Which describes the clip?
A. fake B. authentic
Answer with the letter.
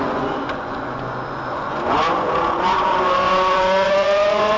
A